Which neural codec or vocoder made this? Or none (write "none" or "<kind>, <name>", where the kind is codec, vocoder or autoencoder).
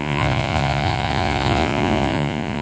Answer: vocoder, Vocos